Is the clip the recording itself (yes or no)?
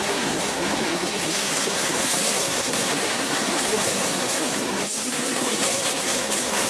no